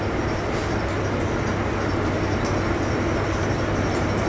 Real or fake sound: real